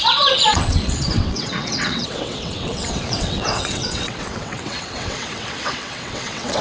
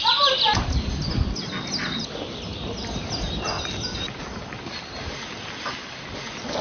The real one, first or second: second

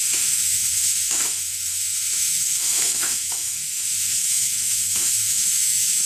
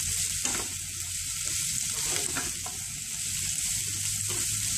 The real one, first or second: second